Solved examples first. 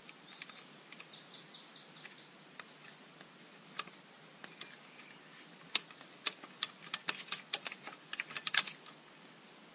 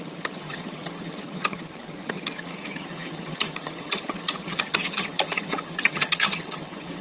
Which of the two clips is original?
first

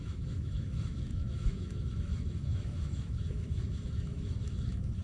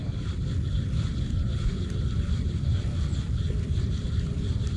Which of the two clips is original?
second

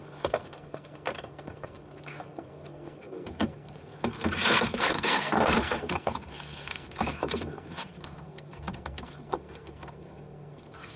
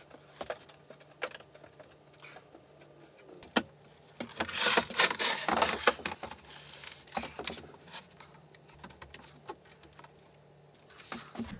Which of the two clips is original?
second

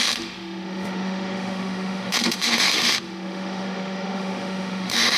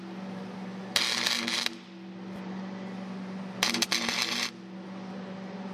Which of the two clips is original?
second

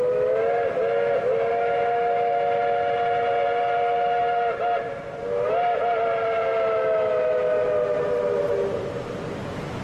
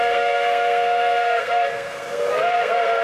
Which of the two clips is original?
first